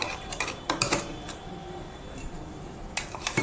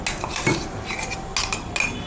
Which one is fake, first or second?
first